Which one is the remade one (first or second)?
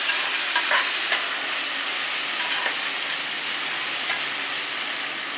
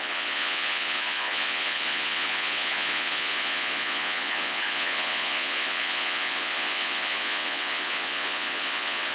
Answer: second